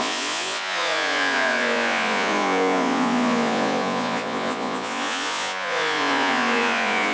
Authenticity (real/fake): fake